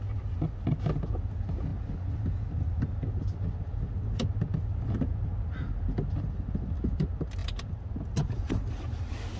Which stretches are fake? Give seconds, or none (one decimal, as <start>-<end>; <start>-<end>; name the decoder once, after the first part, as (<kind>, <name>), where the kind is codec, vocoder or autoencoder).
none